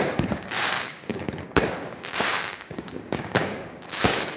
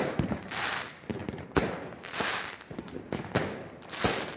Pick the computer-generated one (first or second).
first